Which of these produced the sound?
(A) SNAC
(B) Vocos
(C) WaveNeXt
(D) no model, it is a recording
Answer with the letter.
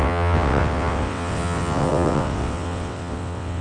C